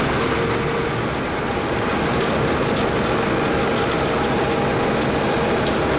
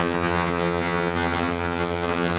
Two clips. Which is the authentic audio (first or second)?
first